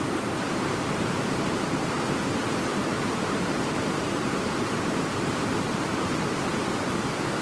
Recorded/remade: remade